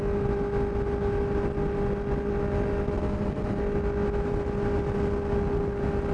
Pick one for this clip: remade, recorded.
recorded